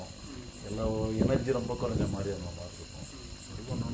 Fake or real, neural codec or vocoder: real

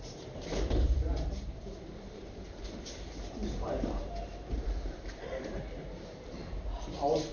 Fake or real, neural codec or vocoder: fake, vocoder, BigVGAN v2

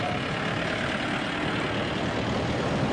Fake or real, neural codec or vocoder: real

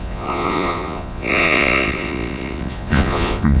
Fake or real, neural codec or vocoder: fake, vocoder, Vocos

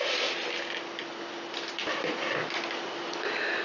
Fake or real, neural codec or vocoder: real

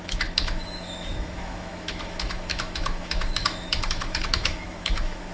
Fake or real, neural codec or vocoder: fake, autoencoder, DAC-VAE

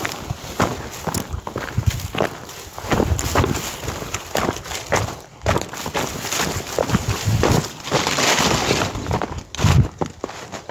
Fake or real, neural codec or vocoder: real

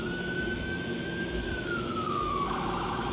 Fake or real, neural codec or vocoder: fake, autoencoder, DAC-VAE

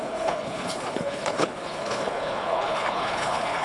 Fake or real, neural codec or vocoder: fake, codec, HILCodec